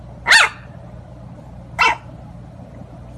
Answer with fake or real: real